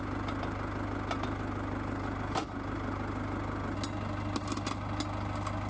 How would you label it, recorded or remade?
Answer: recorded